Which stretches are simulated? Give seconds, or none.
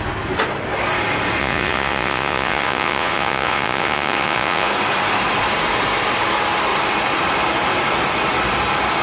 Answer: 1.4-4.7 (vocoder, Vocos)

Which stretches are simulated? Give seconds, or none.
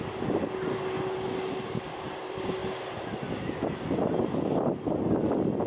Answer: none